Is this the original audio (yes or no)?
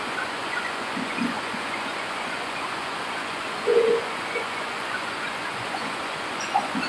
no